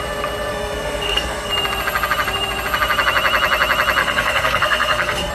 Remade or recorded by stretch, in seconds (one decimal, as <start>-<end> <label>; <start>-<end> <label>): 0.0-0.5 recorded; 0.5-1.5 remade; 1.5-4.0 recorded; 4.0-5.3 remade